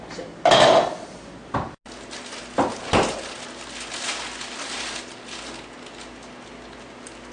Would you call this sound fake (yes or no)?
no